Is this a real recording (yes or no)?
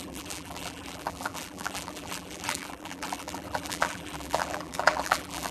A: no